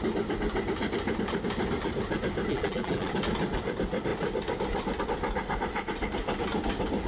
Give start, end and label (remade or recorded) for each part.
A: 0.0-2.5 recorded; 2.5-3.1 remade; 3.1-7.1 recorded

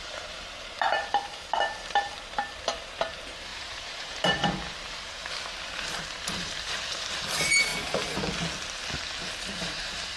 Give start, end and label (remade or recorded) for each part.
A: 0.0-5.2 remade; 5.2-5.7 recorded; 5.7-7.7 remade; 7.7-9.5 recorded; 9.5-10.2 remade

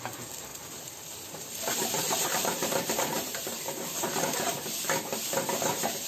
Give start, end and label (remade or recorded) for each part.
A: 0.0-0.5 recorded; 0.5-4.2 remade; 4.2-6.1 recorded

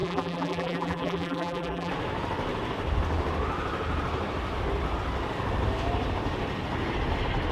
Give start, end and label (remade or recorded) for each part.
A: 0.0-1.9 remade; 1.9-7.5 recorded